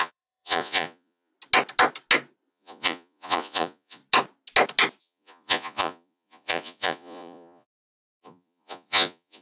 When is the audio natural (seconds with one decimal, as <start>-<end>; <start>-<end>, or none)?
1.3-2.5; 4.0-5.0